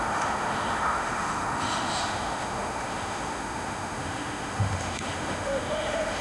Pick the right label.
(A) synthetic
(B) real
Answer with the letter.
A